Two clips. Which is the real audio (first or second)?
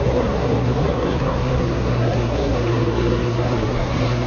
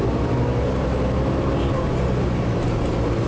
second